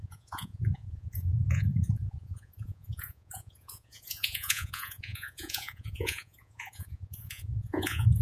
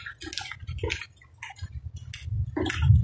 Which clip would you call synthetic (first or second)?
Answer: first